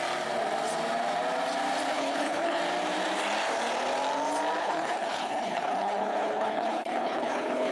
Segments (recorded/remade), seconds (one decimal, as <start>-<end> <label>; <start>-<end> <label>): 0.0-1.9 recorded; 1.9-2.6 remade; 2.6-4.6 recorded; 4.6-7.7 remade